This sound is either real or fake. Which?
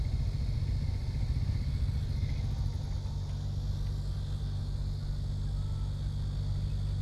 real